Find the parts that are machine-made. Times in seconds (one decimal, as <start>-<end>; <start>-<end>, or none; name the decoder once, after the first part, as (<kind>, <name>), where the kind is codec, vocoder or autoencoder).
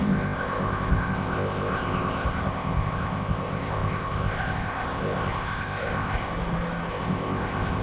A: 0.0-6.3 (codec, ZipCodec); 6.9-7.8